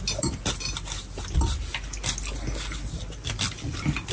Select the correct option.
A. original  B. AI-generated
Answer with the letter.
A